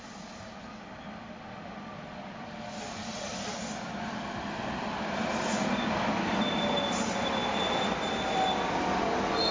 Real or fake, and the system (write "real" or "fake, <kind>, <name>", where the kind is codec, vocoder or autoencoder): real